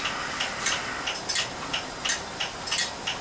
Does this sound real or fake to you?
real